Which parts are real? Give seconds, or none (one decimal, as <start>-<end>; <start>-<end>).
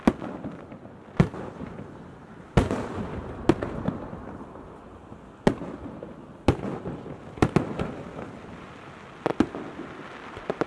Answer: 0.0-10.7